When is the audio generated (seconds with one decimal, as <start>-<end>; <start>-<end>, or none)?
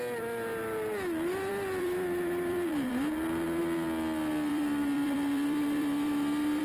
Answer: 1.5-3.6; 4.5-6.6